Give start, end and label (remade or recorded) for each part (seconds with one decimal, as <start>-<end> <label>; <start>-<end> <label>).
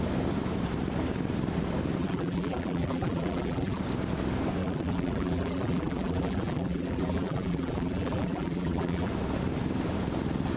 0.0-2.0 recorded; 2.0-3.8 remade; 3.8-4.6 recorded; 4.6-9.1 remade; 9.1-10.6 recorded